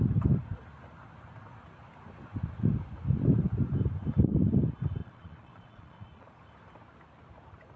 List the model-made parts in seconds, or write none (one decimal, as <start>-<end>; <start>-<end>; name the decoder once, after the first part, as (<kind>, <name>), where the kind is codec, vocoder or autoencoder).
5.0-6.4 (vocoder, Vocos)